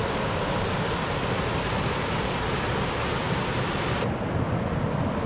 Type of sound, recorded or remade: recorded